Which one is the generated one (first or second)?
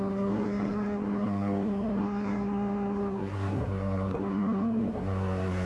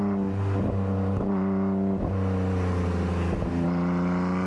first